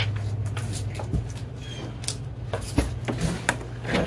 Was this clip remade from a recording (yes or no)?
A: no